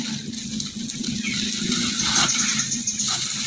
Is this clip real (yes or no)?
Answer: yes